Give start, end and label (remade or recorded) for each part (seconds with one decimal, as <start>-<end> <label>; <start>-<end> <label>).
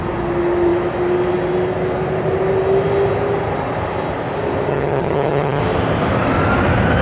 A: 0.0-4.7 recorded; 4.7-5.6 remade; 5.6-7.0 recorded